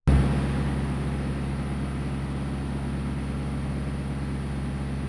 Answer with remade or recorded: recorded